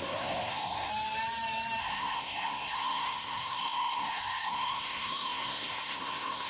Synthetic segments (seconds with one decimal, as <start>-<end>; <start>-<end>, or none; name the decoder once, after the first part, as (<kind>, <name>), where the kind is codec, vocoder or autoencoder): 0.0-0.9 (codec, SNAC); 1.8-6.5